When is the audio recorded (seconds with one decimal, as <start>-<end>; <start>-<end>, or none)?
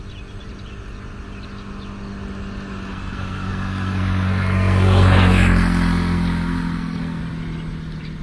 0.0-2.9; 7.2-8.2